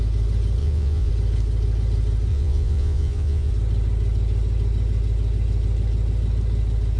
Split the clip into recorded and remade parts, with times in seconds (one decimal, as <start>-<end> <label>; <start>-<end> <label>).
0.0-0.6 recorded; 0.6-1.1 remade; 1.1-2.3 recorded; 2.3-3.5 remade; 3.5-7.0 recorded